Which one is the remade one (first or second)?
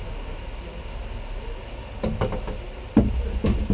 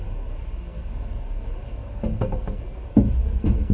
second